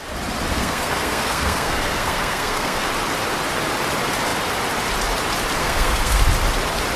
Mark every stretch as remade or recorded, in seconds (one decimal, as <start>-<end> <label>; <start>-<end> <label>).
0.0-0.5 recorded; 0.5-2.9 remade; 2.9-5.6 recorded; 5.6-6.2 remade; 6.2-7.0 recorded